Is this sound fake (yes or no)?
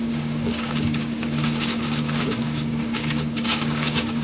yes